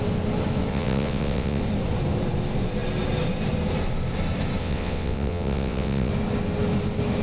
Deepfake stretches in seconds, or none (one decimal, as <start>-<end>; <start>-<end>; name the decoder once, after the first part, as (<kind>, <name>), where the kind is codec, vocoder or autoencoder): 0.7-1.6 (vocoder, WaveNeXt); 4.6-6.1